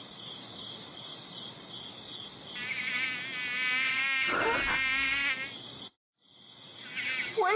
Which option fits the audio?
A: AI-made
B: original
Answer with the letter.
B